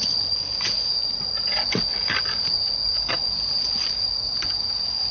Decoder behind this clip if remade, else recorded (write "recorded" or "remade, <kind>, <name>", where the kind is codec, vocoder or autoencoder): recorded